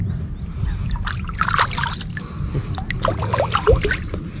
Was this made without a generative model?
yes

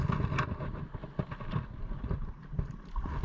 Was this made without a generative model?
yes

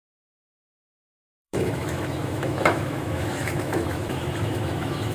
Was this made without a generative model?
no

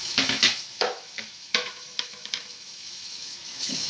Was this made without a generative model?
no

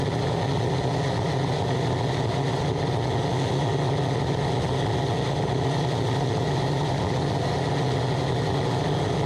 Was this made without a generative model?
yes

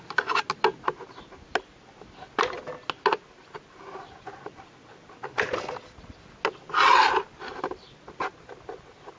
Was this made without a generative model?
yes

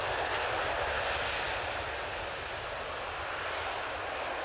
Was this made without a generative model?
yes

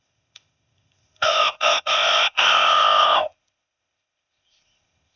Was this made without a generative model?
no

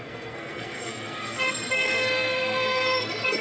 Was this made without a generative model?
no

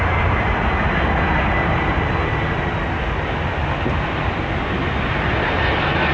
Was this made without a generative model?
yes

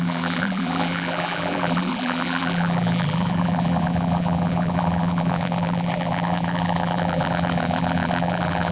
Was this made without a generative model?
no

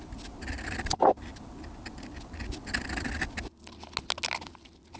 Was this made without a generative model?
yes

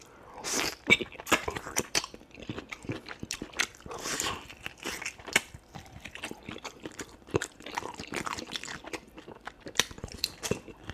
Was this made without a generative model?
no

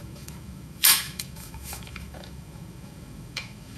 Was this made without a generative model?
no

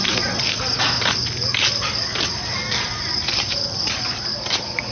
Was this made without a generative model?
yes